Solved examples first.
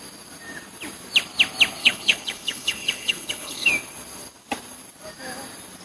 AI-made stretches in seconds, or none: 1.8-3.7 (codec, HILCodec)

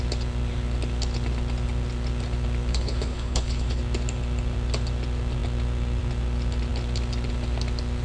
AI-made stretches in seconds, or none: 2.7-3.8 (codec, HILCodec)

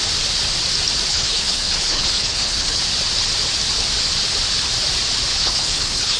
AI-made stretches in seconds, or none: 1.1-2.8 (codec, HILCodec); 5.3-6.2

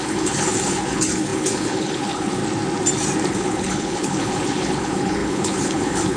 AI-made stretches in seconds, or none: 0.0-2.4 (codec, HILCodec); 3.3-6.2